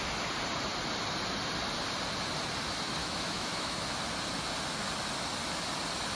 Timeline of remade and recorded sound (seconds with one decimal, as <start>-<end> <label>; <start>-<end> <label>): 0.0-3.0 recorded; 3.0-3.8 remade; 3.8-6.1 recorded

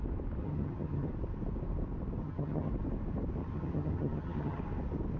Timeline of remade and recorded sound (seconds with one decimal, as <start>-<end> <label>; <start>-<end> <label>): 0.0-0.4 recorded; 0.4-1.1 remade; 1.1-2.2 recorded; 2.2-2.7 remade; 2.7-3.4 recorded; 3.4-4.6 remade; 4.6-5.2 recorded

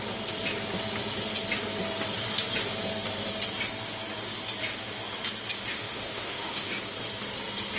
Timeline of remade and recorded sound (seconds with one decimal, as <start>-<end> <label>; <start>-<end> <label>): 0.0-5.7 recorded; 5.7-6.7 remade; 6.7-7.8 recorded

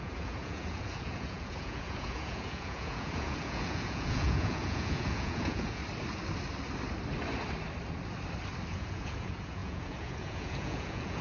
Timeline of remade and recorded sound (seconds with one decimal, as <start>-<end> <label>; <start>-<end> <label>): 0.0-5.8 remade; 5.8-8.7 recorded; 8.7-11.2 remade

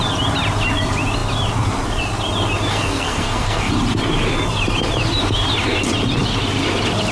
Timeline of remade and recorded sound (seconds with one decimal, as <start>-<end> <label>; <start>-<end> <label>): 0.0-2.7 recorded; 2.7-3.7 remade; 3.7-7.1 recorded

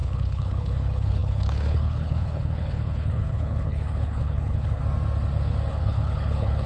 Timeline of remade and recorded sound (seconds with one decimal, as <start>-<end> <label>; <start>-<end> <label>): 0.0-4.8 remade; 4.8-5.7 recorded; 5.7-6.7 remade

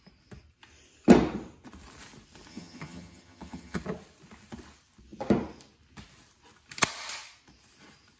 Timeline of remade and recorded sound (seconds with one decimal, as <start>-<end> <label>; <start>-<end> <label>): 0.0-2.5 recorded; 2.5-3.8 remade; 3.8-8.2 recorded